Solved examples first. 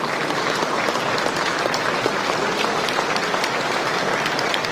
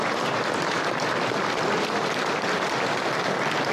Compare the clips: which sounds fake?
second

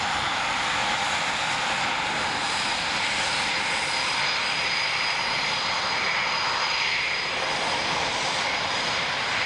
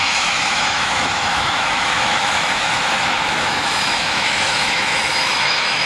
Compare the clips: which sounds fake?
second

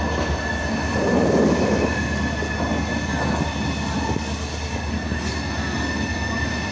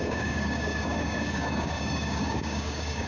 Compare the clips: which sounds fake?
second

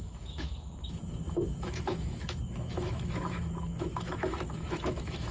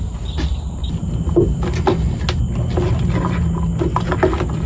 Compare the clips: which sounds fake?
first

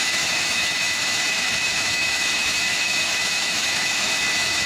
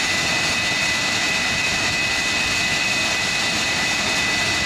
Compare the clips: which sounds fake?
first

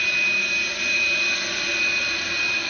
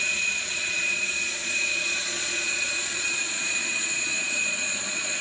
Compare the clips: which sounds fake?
second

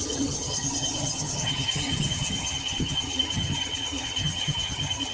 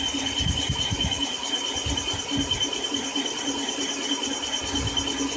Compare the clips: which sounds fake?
first